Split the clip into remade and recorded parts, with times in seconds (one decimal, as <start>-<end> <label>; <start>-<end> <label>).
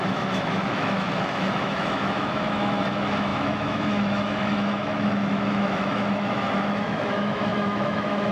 0.0-8.3 remade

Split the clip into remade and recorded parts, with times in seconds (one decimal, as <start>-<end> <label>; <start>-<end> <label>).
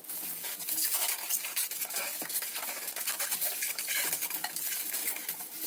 0.0-1.2 remade; 1.2-1.8 recorded; 1.8-5.7 remade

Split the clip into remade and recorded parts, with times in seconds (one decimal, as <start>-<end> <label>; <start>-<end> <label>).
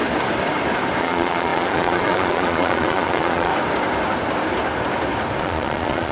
0.0-1.0 recorded; 1.0-3.5 remade; 3.5-5.4 recorded; 5.4-6.1 remade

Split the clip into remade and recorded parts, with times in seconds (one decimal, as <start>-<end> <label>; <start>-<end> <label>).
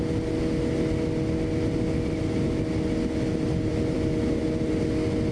0.0-3.7 recorded; 3.7-4.7 remade; 4.7-5.3 recorded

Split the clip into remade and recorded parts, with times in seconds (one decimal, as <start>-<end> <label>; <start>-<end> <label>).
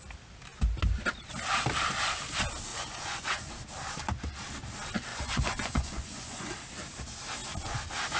0.0-2.7 recorded; 2.7-3.5 remade; 3.5-5.1 recorded; 5.1-6.5 remade; 6.5-8.2 recorded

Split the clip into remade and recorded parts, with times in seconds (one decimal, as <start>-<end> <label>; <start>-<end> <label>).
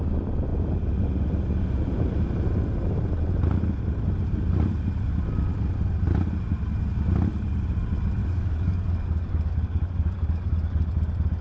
0.0-8.2 recorded; 8.2-10.9 remade; 10.9-11.4 recorded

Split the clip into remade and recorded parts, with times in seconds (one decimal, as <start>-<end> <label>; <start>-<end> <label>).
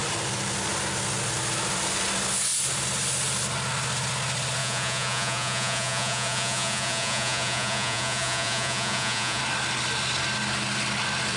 0.0-4.6 recorded; 4.6-9.4 remade; 9.4-11.4 recorded